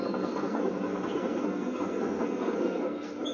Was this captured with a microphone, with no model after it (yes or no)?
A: no